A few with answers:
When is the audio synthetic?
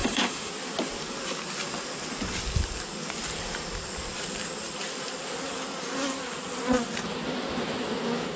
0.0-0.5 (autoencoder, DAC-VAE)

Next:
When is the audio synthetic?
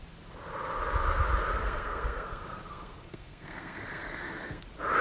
1.6-4.6 (codec, SNAC)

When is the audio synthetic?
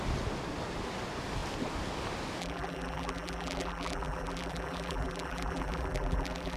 2.4-6.6 (vocoder, BigVGAN v2)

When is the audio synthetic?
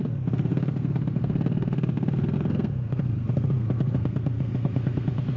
0.0-5.4 (codec, SNAC)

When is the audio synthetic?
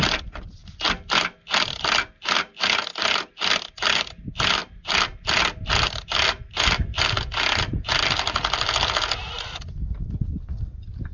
none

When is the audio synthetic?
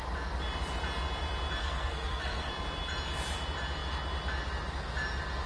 1.6-2.5 (codec, SNAC)